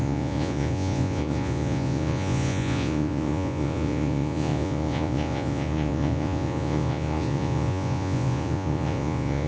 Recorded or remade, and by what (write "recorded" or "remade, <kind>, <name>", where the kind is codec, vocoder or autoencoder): remade, vocoder, Vocos